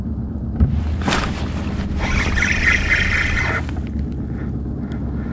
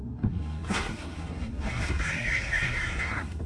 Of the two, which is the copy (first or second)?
second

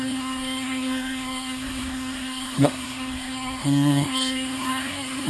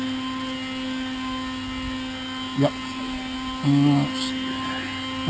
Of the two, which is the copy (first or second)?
first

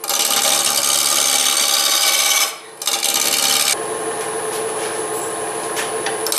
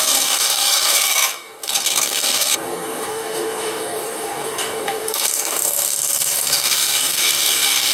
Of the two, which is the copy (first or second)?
second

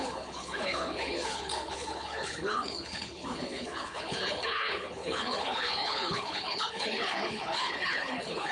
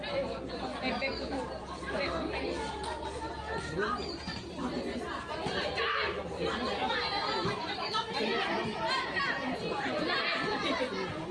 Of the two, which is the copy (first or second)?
first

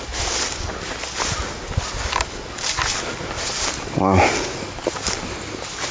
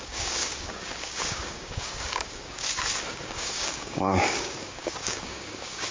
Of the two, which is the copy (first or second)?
second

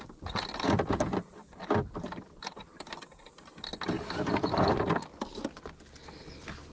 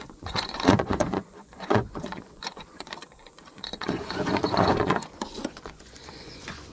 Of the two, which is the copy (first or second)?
second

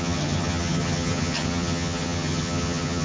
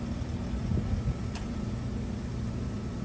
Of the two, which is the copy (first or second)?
first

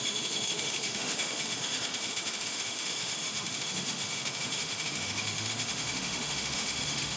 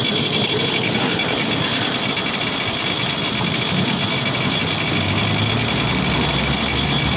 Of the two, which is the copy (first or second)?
first